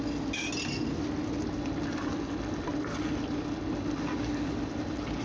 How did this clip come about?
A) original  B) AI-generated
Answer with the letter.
A